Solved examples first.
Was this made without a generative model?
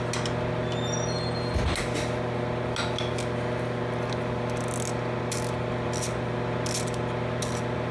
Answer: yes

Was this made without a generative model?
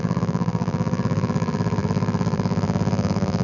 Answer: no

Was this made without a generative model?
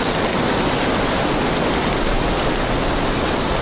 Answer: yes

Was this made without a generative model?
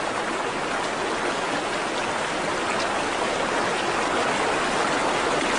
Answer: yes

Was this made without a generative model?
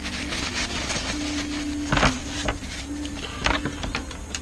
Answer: yes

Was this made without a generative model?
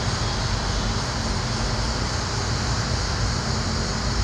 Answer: yes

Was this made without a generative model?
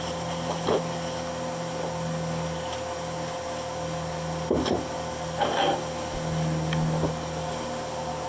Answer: yes